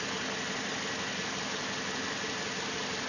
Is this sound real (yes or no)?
yes